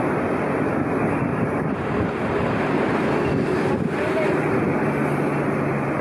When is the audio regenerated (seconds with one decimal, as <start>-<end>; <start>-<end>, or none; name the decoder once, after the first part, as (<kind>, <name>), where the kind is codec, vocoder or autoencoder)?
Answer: 1.3-3.1 (vocoder, BigVGAN v2)

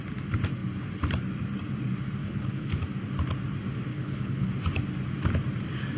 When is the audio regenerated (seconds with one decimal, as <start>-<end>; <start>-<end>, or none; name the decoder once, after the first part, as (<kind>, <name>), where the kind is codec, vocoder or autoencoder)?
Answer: 2.2-2.7 (codec, HILCodec); 3.9-4.5

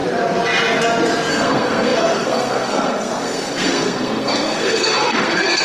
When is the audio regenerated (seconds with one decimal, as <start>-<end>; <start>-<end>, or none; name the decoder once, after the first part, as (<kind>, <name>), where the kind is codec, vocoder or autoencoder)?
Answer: 1.3-5.6 (codec, SNAC)

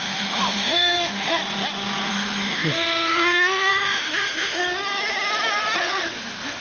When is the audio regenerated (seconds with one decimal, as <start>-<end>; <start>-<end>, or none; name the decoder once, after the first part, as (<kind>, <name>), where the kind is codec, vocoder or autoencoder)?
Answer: 0.0-1.4 (autoencoder, DAC-VAE); 2.1-4.6; 5.8-6.6